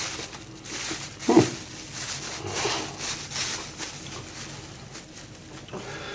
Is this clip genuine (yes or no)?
yes